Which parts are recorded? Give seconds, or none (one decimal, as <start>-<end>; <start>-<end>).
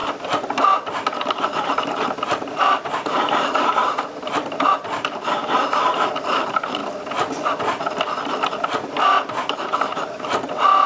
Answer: 6.8-8.6